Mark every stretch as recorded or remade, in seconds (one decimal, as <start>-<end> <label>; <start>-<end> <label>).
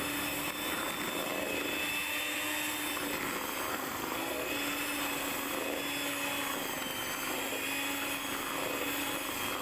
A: 0.0-3.7 recorded; 3.7-4.5 remade; 4.5-9.6 recorded